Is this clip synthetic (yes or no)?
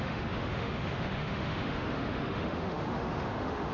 yes